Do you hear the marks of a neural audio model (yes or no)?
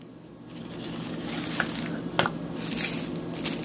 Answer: no